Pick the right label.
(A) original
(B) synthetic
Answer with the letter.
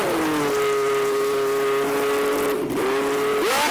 A